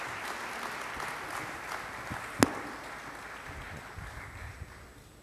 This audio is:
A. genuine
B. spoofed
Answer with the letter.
A